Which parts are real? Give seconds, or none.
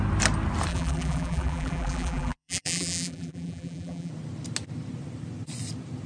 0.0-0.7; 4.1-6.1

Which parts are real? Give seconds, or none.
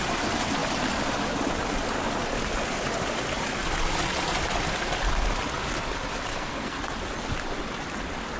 0.0-6.3; 6.8-8.4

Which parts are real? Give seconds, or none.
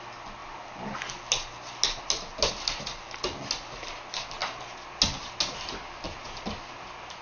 0.0-0.4; 1.1-7.2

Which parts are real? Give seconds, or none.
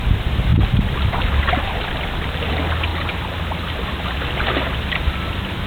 0.0-0.5; 2.5-2.9; 4.2-5.7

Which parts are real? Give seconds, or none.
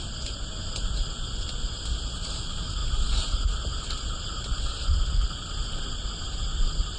0.0-7.0